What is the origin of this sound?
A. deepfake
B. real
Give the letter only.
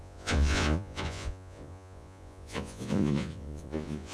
A